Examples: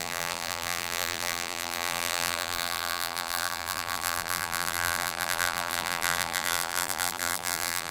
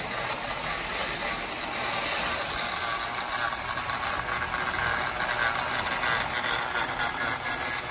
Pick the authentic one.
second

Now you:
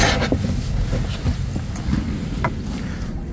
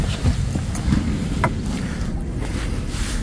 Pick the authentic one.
first